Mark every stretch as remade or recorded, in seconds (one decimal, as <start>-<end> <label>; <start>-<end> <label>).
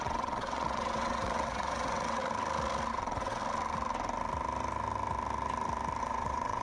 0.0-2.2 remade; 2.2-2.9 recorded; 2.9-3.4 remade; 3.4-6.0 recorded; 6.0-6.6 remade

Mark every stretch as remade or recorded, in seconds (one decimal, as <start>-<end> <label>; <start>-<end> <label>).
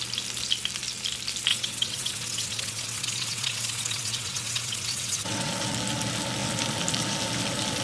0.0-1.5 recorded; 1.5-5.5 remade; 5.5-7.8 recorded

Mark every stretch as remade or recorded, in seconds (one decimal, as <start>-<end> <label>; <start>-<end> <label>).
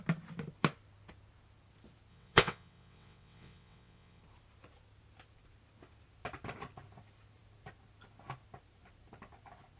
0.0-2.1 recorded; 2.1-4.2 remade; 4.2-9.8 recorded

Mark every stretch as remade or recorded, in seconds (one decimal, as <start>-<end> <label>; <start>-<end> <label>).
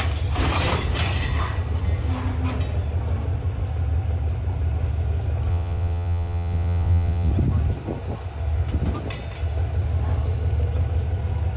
0.0-5.5 recorded; 5.5-7.3 remade; 7.3-11.6 recorded